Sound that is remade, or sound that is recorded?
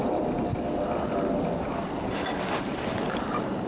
recorded